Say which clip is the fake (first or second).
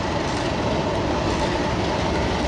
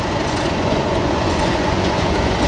second